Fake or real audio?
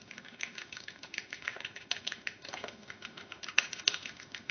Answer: fake